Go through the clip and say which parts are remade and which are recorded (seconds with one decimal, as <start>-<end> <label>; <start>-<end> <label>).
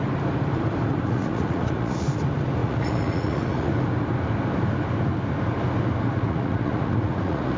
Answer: 0.0-0.9 recorded; 0.9-2.2 remade; 2.2-2.6 recorded; 2.6-3.7 remade; 3.7-6.1 recorded; 6.1-7.6 remade